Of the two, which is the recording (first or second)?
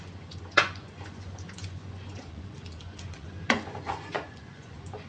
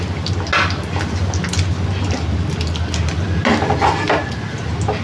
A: second